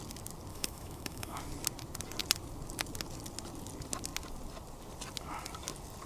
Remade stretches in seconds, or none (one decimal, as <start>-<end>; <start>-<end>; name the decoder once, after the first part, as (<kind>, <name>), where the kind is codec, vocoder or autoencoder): 0.5-1.4 (autoencoder, DAC-VAE)